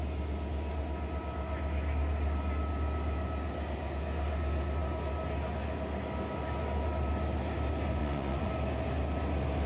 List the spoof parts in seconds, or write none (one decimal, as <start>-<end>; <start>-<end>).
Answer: 8.0-8.5